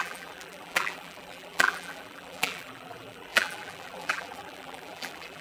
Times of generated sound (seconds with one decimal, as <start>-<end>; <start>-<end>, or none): 0.0-5.4